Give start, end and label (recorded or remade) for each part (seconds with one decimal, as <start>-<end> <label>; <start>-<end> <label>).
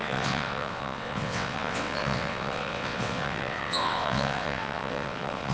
0.0-5.5 remade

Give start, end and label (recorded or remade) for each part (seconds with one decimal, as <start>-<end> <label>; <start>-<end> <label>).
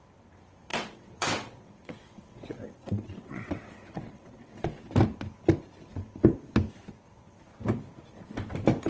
0.0-0.7 recorded; 0.7-4.9 remade; 4.9-8.9 recorded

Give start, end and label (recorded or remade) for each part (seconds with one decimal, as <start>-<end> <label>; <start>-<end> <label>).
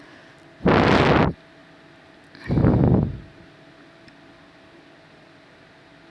0.0-6.1 recorded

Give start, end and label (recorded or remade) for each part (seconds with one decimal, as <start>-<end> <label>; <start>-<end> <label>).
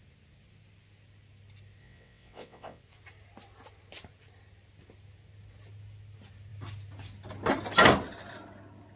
0.0-1.8 recorded; 1.8-2.8 remade; 2.8-9.0 recorded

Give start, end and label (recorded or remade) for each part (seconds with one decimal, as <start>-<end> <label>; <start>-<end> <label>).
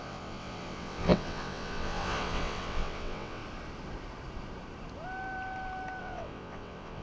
0.0-3.4 remade; 3.4-6.0 recorded; 6.0-7.0 remade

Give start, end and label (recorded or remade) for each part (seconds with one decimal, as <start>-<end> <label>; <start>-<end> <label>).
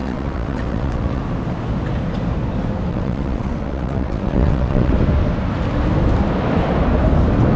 0.0-1.2 remade; 1.2-2.9 recorded; 2.9-4.9 remade; 4.9-7.6 recorded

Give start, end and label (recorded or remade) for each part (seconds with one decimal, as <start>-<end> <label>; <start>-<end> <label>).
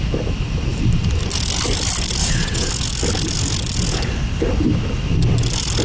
0.0-2.2 recorded; 2.2-2.7 remade; 2.7-5.8 recorded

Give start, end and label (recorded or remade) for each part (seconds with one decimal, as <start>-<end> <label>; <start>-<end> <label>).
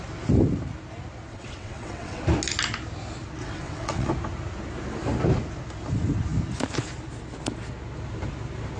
0.0-1.3 recorded; 1.3-2.2 remade; 2.2-3.4 recorded; 3.4-4.1 remade; 4.1-8.8 recorded